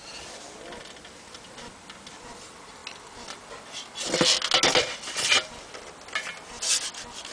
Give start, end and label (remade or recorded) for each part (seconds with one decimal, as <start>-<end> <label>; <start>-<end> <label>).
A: 0.0-7.3 recorded